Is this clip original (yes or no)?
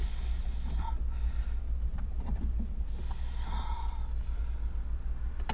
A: yes